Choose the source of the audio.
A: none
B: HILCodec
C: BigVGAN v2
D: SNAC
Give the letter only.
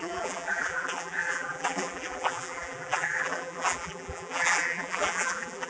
C